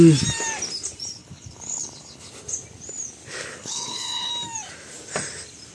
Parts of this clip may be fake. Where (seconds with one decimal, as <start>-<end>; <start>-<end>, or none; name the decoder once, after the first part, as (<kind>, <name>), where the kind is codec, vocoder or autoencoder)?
1.2-2.3 (codec, HILCodec); 3.6-4.3